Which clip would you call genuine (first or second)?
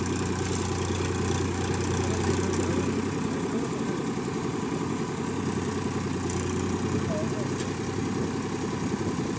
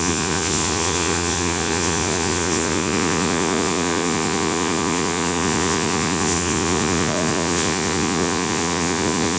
first